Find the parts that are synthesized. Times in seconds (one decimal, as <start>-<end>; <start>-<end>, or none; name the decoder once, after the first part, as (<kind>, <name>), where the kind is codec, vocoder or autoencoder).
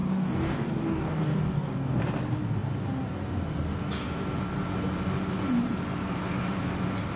0.0-2.0 (codec, DAC)